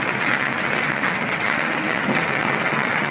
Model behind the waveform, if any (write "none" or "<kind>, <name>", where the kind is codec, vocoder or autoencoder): vocoder, WaveNeXt